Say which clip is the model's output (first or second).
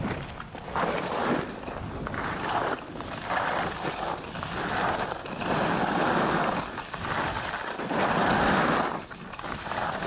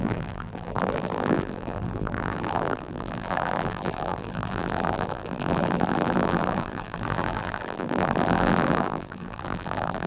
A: second